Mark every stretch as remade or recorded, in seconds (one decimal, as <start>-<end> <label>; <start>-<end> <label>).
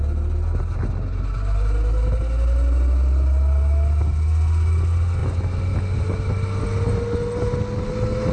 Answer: 0.0-8.3 recorded